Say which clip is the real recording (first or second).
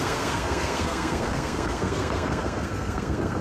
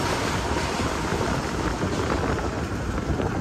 second